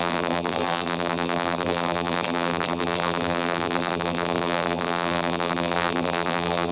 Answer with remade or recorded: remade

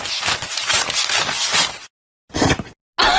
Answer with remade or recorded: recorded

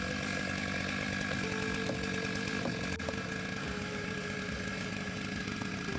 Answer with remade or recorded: recorded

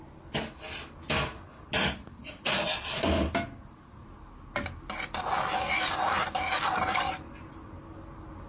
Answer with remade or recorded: recorded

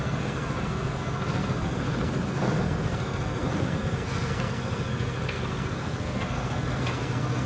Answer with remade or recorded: remade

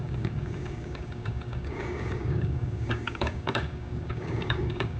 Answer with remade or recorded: remade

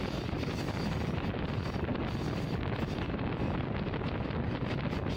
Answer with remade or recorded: recorded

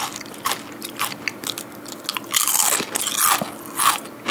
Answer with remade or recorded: recorded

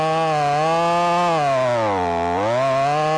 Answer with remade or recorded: recorded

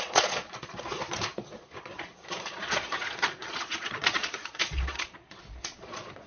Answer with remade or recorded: remade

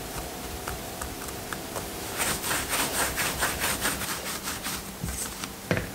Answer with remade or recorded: remade